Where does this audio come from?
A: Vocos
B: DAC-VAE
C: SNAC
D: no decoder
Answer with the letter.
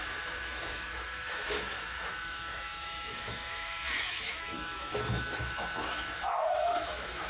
B